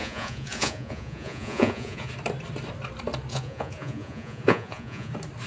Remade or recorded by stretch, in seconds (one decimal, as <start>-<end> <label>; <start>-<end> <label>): 0.0-2.1 remade; 2.1-3.3 recorded; 3.3-5.1 remade; 5.1-5.5 recorded